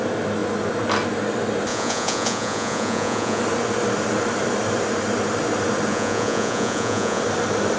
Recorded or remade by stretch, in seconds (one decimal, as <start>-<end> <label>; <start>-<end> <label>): 0.0-1.7 recorded; 1.7-3.4 remade; 3.4-5.9 recorded; 5.9-7.2 remade; 7.2-7.8 recorded

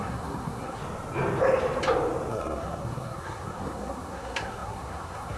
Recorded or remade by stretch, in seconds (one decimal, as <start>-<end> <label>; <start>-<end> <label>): 0.0-0.8 remade; 0.8-2.3 recorded; 2.3-5.4 remade